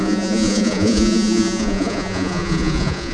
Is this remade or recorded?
remade